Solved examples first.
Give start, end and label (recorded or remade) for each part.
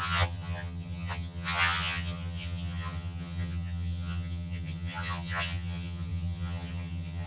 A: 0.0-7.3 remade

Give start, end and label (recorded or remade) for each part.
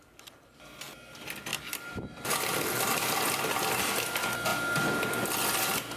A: 0.0-1.5 recorded; 1.5-3.8 remade; 3.8-4.5 recorded; 4.5-5.4 remade; 5.4-6.0 recorded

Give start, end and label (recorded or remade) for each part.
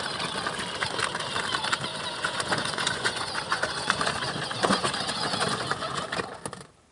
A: 0.0-1.9 recorded; 1.9-6.0 remade; 6.0-6.9 recorded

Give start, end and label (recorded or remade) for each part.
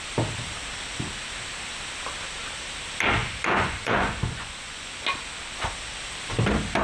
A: 0.0-3.2 recorded; 3.2-4.9 remade; 4.9-6.8 recorded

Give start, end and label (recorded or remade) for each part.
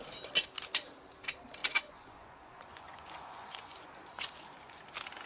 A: 0.0-1.6 recorded; 1.6-4.8 remade; 4.8-5.3 recorded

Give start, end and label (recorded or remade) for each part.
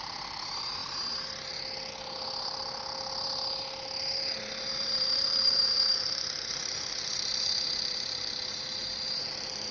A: 0.0-4.7 recorded; 4.7-9.7 remade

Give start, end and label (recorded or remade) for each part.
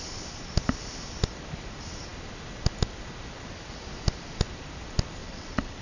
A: 0.0-5.2 recorded; 5.2-5.8 remade